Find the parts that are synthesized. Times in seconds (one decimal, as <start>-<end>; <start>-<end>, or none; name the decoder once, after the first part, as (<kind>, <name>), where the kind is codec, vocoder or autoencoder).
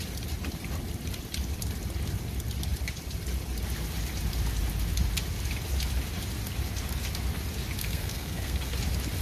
7.8-8.7 (codec, SNAC)